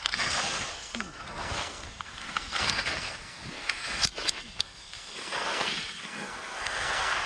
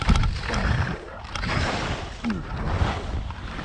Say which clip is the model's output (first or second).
first